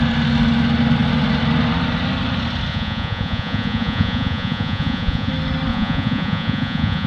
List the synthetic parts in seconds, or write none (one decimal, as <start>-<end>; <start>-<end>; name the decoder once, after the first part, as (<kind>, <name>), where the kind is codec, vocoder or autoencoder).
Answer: 2.7-5.3 (vocoder, Vocos); 5.7-7.1